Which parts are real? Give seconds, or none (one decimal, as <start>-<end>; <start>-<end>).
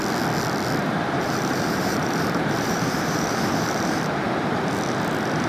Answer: 0.0-0.8; 4.1-5.5